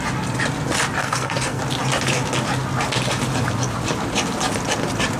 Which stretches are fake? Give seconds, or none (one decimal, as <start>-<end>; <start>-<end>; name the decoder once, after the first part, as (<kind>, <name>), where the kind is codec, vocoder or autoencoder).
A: 1.0-1.6 (codec, SNAC)